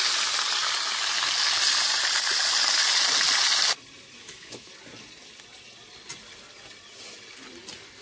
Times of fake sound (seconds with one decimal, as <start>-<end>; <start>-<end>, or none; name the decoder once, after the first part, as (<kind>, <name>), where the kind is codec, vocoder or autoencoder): 4.2-4.7 (autoencoder, DAC-VAE)